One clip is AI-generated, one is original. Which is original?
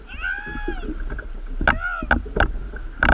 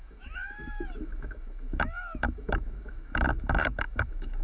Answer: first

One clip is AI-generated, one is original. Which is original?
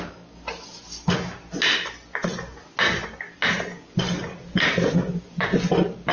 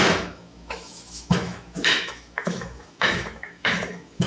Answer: first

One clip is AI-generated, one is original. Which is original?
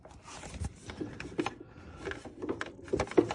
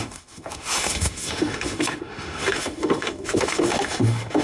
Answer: first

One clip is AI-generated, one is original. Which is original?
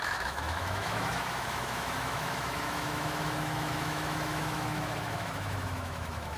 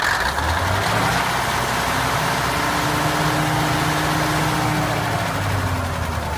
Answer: second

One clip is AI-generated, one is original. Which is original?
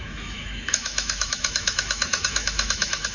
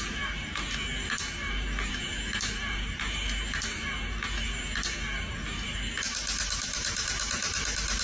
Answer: second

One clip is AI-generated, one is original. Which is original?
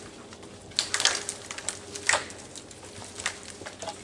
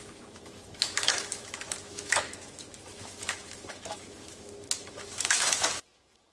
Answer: first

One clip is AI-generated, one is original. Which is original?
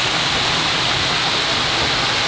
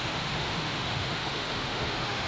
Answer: first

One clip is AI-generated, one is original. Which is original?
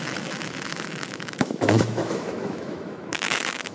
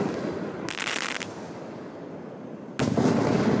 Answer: second